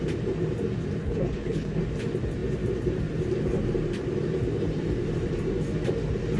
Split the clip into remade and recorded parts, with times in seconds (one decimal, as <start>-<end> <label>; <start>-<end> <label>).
0.0-1.0 recorded; 1.0-1.8 remade; 1.8-6.4 recorded